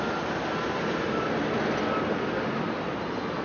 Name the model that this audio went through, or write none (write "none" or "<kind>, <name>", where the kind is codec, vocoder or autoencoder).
none